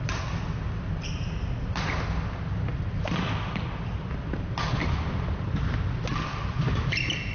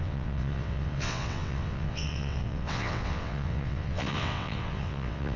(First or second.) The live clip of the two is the first